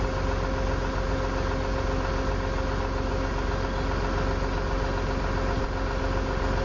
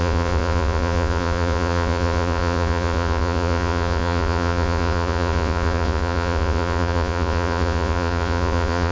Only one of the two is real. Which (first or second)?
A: first